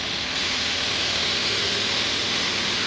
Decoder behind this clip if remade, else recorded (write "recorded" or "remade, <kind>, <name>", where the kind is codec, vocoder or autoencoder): remade, autoencoder, DAC-VAE